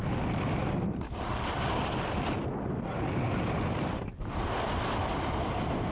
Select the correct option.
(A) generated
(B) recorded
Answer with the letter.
B